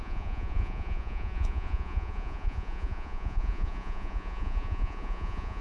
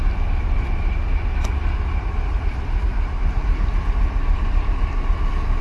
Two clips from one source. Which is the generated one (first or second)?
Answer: first